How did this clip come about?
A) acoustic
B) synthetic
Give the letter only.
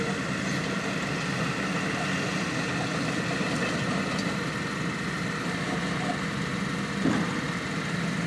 A